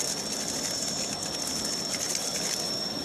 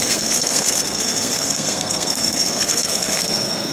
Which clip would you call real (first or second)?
first